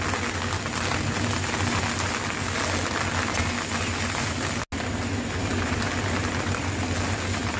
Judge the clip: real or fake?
real